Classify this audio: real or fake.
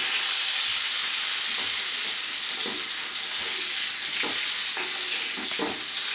real